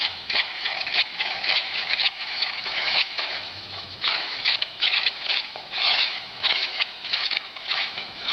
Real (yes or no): no